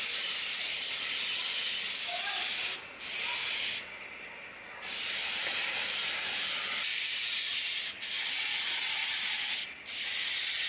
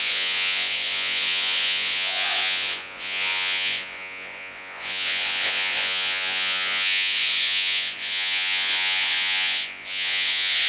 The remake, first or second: second